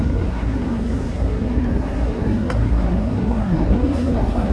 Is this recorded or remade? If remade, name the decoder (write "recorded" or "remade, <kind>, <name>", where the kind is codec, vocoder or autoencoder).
remade, codec, SNAC